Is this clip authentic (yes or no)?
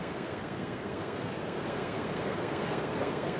no